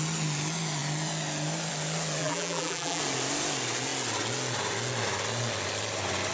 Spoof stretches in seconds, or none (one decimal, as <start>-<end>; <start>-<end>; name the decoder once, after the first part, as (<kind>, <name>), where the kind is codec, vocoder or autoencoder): 2.2-3.0 (vocoder, BigVGAN v2)

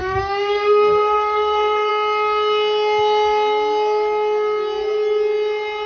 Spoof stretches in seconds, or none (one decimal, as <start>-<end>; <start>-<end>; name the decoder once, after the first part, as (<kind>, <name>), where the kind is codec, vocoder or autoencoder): 0.0-1.9 (codec, SNAC)

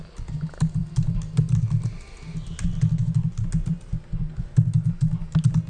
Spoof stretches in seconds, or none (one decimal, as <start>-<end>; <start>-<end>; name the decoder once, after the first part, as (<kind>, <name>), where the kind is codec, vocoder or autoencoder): none

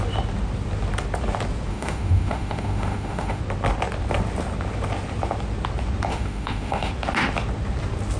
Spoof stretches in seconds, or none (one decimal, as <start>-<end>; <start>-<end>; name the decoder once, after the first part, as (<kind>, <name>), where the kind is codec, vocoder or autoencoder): 1.7-3.4 (autoencoder, DAC-VAE); 6.1-6.9

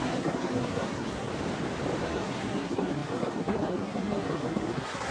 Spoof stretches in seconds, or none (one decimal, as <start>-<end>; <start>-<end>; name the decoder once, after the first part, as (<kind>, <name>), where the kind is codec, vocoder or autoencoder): 0.0-1.3 (codec, SNAC); 2.0-5.1

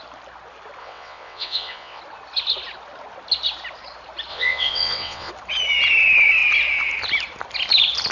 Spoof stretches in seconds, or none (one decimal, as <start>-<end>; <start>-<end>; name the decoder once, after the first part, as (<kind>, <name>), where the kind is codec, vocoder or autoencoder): 0.8-2.0 (vocoder, WaveNeXt); 4.3-5.3

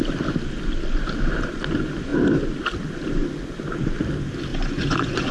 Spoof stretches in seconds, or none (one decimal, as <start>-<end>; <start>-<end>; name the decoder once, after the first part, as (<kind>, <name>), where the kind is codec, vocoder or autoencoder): 4.5-5.3 (vocoder, Vocos)